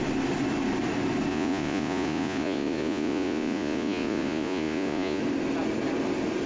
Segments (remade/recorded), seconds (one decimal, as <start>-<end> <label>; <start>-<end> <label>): 0.0-1.3 recorded; 1.3-5.2 remade; 5.2-6.5 recorded